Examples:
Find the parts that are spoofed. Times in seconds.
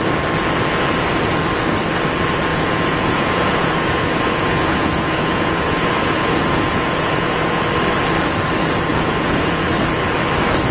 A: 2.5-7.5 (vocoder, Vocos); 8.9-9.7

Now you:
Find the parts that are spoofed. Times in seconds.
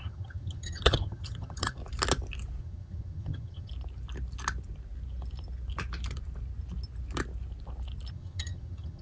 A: 0.0-1.8 (vocoder, HiFi-GAN); 2.6-3.7; 8.1-9.0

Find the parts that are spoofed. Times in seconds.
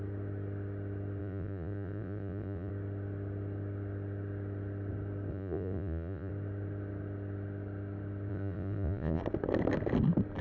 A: 1.2-2.7 (vocoder, Vocos); 5.3-6.3; 8.3-9.2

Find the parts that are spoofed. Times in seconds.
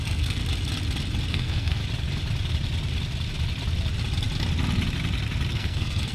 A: 0.0-0.4 (codec, SNAC); 1.3-1.8; 5.5-6.1